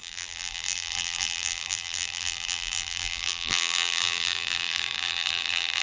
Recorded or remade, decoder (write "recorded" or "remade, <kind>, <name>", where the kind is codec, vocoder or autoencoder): remade, vocoder, BigVGAN v2